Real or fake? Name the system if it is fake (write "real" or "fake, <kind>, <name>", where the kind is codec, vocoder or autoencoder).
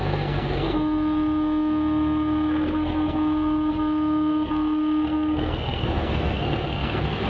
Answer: fake, codec, SNAC